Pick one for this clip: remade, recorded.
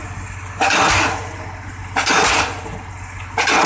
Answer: recorded